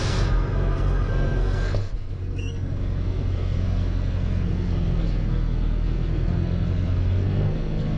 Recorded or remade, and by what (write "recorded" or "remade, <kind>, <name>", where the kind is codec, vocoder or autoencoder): remade, codec, SNAC